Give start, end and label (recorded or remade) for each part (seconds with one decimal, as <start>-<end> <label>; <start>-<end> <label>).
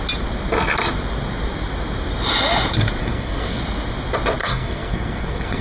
0.0-3.0 recorded; 3.0-3.6 remade; 3.6-4.4 recorded; 4.4-5.6 remade